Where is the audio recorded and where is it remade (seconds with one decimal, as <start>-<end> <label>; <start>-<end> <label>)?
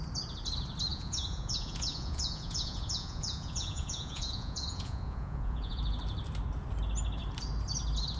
0.0-0.9 recorded; 0.9-5.8 remade; 5.8-8.2 recorded